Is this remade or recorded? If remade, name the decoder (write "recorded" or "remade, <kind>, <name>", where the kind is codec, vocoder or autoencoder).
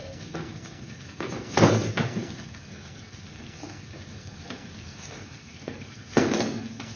remade, codec, SNAC